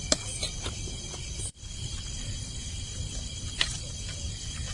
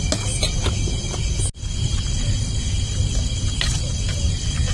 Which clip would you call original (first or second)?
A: second